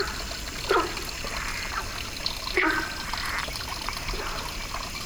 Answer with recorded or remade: recorded